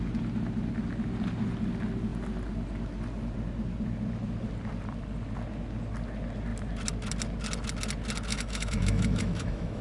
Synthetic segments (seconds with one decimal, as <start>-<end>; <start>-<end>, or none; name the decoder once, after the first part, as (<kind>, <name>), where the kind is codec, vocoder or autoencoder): 8.3-9.8 (autoencoder, DAC-VAE)